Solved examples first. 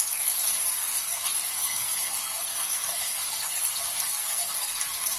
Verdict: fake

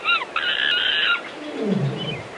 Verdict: real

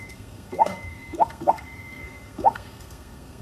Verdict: fake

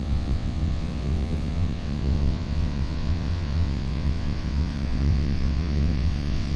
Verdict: fake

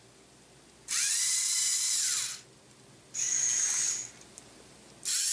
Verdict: real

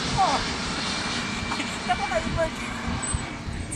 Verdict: real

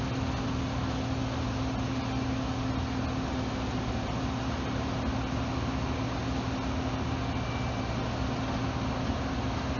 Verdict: real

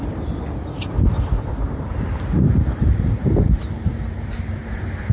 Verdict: fake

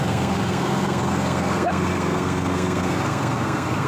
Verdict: fake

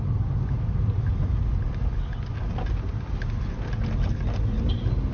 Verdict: real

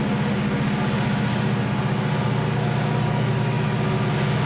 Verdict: real